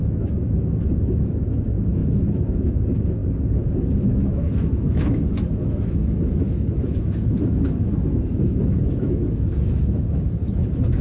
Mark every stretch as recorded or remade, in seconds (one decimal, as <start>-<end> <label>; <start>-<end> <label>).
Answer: 0.0-3.2 remade; 3.2-4.0 recorded; 4.0-11.0 remade